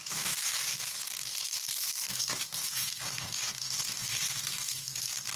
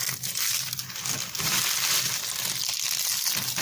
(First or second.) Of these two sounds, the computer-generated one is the first